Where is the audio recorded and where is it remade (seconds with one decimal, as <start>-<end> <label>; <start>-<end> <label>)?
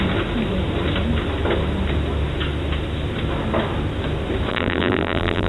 0.0-4.5 recorded; 4.5-5.5 remade